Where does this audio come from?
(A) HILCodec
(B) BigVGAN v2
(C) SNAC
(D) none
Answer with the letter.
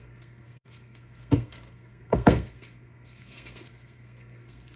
C